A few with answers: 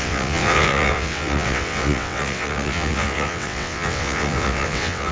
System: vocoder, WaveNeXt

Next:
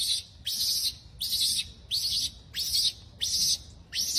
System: none